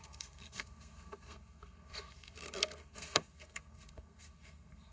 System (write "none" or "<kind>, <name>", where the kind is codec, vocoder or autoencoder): codec, SNAC